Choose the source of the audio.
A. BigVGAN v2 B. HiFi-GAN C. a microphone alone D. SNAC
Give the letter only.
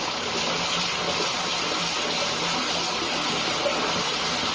C